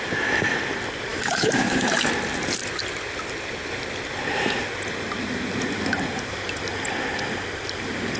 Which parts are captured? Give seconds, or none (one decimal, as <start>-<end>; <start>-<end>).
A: 0.0-1.1; 2.1-8.2